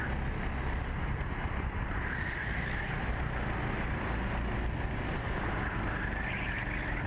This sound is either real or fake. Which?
real